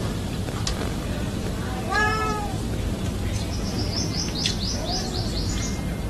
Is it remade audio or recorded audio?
remade